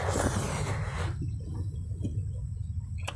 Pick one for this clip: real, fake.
real